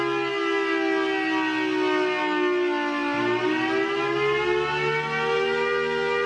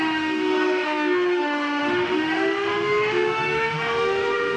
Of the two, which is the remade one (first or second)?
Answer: second